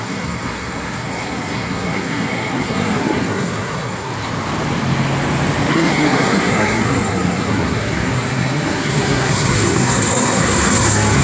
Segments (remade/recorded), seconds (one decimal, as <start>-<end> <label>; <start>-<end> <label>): 0.0-4.1 remade; 4.1-5.7 recorded; 5.7-11.2 remade